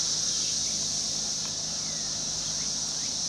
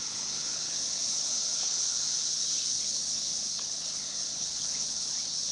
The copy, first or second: second